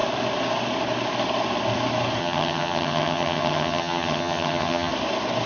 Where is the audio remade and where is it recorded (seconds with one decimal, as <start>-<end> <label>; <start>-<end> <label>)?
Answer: 0.0-2.2 recorded; 2.2-4.9 remade; 4.9-5.5 recorded